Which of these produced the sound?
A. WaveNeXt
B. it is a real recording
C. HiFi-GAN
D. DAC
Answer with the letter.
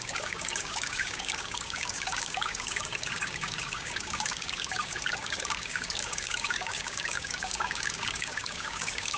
D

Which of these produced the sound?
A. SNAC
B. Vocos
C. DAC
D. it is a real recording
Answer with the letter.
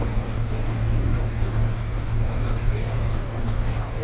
C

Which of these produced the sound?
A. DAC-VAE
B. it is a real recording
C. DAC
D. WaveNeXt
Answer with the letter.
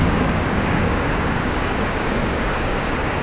C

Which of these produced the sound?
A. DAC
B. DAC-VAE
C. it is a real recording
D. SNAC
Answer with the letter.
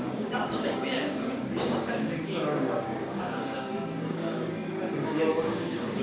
A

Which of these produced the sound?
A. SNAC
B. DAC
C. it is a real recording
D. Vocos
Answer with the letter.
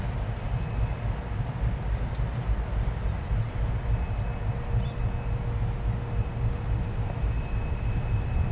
C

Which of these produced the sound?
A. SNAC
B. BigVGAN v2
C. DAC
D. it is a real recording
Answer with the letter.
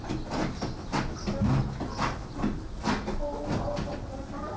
D